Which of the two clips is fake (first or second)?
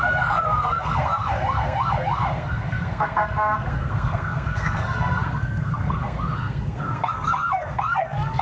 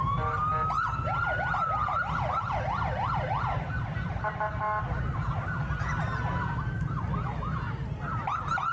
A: first